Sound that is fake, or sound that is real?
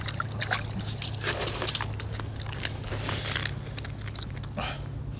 real